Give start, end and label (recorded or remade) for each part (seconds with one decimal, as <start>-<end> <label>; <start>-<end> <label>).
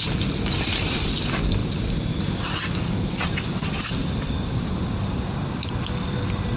0.0-1.6 recorded; 1.6-2.2 remade; 2.2-4.0 recorded; 4.0-5.7 remade; 5.7-6.6 recorded